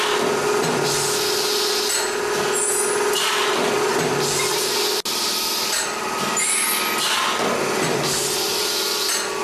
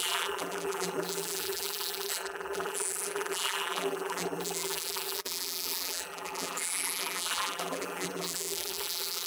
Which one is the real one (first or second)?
first